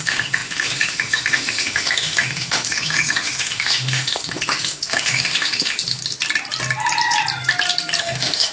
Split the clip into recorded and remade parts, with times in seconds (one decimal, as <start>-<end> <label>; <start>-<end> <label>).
0.0-6.0 remade; 6.0-8.0 recorded; 8.0-8.5 remade